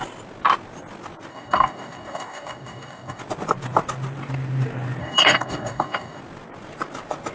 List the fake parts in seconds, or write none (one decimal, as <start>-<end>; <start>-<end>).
1.3-3.2; 5.0-6.2